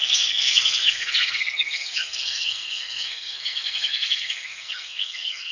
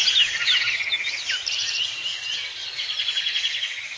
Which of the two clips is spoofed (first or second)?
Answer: first